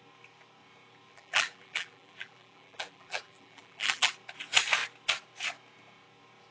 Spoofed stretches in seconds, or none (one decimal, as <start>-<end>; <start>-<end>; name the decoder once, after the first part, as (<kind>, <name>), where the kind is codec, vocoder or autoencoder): 1.1-4.1 (vocoder, BigVGAN v2)